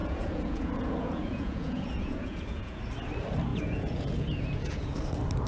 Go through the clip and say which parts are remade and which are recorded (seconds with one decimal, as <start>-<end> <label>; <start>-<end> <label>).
0.0-2.8 remade; 2.8-3.5 recorded; 3.5-4.9 remade; 4.9-5.5 recorded